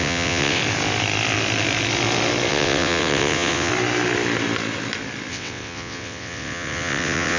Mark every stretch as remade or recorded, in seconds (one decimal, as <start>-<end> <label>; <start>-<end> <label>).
0.0-0.6 remade; 0.6-2.5 recorded; 2.5-3.7 remade; 3.7-5.3 recorded; 5.3-7.4 remade